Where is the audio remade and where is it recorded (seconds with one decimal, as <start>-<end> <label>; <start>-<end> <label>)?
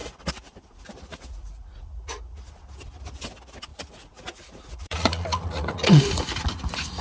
0.0-2.6 remade; 2.6-3.7 recorded; 3.7-6.0 remade; 6.0-7.0 recorded